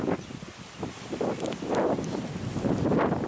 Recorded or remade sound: remade